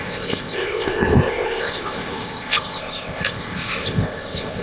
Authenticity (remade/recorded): remade